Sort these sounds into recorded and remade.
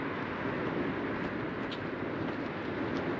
recorded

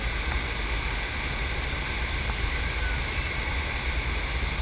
recorded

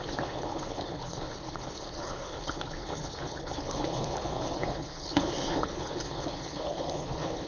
remade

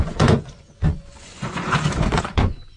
remade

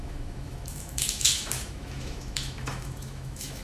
remade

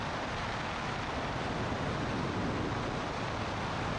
recorded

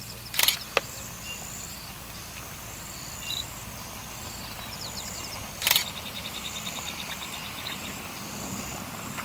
remade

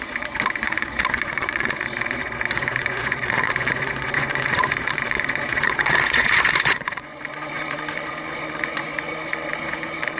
remade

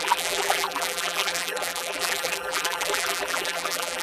remade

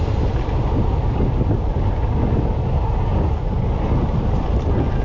recorded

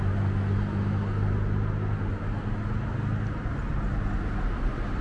recorded